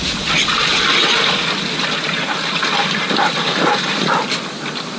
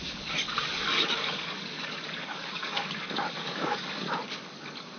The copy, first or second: second